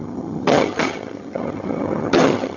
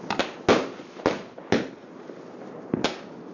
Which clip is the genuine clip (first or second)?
second